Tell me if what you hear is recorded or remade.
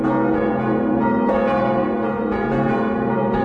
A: remade